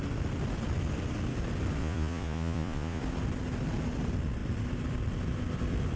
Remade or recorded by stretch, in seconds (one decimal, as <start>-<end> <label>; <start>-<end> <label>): 0.0-1.8 recorded; 1.8-3.0 remade; 3.0-6.0 recorded